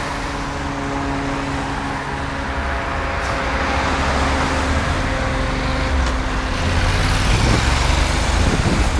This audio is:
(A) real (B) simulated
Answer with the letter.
A